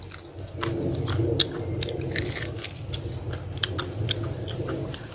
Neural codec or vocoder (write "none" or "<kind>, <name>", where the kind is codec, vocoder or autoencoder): none